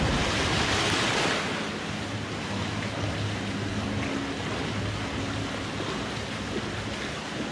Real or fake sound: real